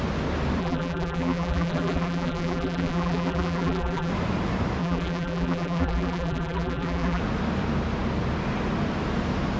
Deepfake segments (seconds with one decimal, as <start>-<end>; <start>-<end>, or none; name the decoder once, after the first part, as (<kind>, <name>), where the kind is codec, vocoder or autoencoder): 0.6-4.1 (vocoder, BigVGAN v2); 4.8-7.2